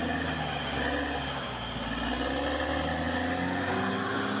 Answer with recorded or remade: recorded